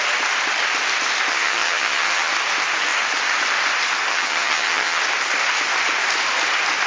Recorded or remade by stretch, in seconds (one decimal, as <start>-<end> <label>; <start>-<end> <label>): 0.0-1.3 recorded; 1.3-2.3 remade; 2.3-4.1 recorded; 4.1-5.0 remade; 5.0-6.9 recorded